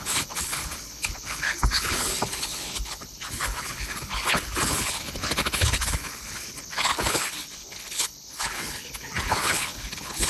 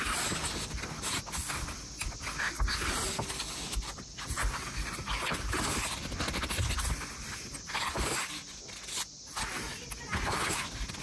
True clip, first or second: second